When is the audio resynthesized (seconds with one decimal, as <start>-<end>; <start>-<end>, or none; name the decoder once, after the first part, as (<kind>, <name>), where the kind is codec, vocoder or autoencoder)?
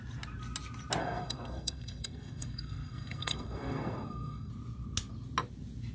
1.0-4.5 (codec, SNAC)